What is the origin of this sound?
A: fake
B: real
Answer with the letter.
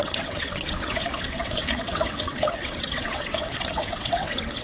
A